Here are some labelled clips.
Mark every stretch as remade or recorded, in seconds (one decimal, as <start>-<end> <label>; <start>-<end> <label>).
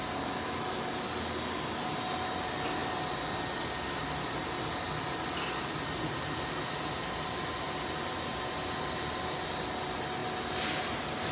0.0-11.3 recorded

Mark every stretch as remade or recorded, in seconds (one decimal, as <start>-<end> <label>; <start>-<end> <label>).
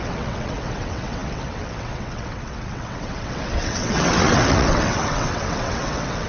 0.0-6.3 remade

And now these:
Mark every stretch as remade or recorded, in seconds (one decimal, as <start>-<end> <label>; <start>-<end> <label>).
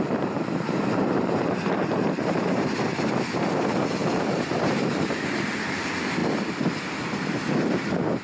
0.0-6.2 remade; 6.2-7.0 recorded; 7.0-8.2 remade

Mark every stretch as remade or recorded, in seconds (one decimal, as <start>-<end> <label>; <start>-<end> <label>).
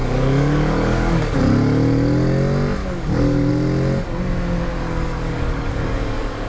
0.0-1.4 remade; 1.4-2.8 recorded; 2.8-3.5 remade; 3.5-4.7 recorded; 4.7-6.5 remade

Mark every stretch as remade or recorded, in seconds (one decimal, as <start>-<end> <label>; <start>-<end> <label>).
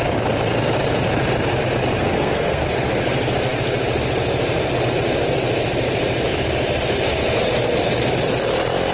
0.0-2.0 recorded; 2.0-2.6 remade; 2.6-8.9 recorded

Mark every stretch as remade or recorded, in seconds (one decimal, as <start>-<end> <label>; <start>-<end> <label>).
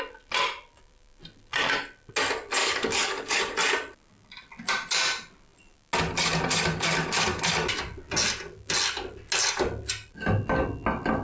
0.0-2.6 recorded; 2.6-3.4 remade; 3.4-11.2 recorded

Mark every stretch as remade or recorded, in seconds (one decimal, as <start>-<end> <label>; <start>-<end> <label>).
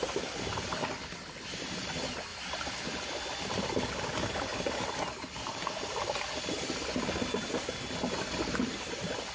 0.0-4.5 remade; 4.5-8.1 recorded; 8.1-9.3 remade